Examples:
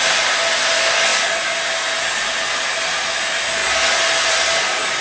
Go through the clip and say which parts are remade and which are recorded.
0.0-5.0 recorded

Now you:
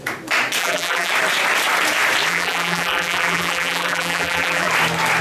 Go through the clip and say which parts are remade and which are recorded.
0.0-0.6 recorded; 0.6-1.1 remade; 1.1-2.3 recorded; 2.3-4.7 remade; 4.7-5.2 recorded

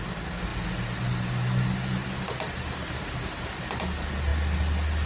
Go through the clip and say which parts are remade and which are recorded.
0.0-5.1 recorded

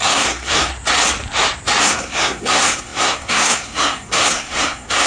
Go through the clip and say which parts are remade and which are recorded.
0.0-0.7 remade; 0.7-1.8 recorded; 1.8-5.1 remade

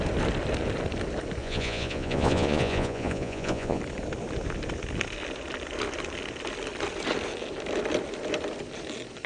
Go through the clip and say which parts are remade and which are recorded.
0.0-1.4 recorded; 1.4-3.8 remade; 3.8-9.3 recorded